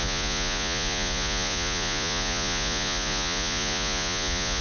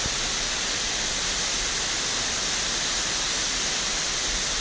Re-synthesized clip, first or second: first